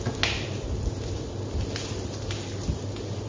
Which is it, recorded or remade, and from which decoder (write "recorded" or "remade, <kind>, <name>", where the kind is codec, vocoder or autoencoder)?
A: recorded